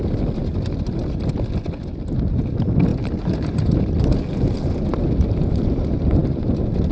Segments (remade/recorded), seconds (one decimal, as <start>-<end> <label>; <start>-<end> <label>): 0.0-2.9 recorded; 2.9-3.8 remade; 3.8-6.9 recorded